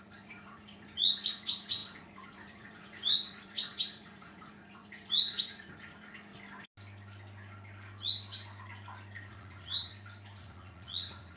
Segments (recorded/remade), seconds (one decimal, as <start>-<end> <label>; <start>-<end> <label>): 0.0-6.3 remade; 6.3-9.3 recorded; 9.3-9.9 remade; 9.9-10.4 recorded; 10.4-11.4 remade